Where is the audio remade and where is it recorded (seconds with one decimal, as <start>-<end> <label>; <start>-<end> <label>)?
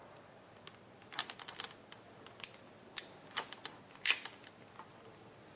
0.0-5.6 recorded